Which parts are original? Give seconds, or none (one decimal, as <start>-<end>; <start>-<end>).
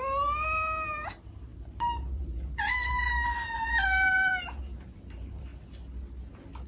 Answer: 5.5-6.7